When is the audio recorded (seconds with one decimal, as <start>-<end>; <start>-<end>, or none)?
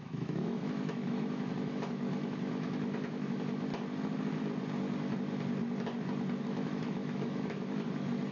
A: 3.7-6.4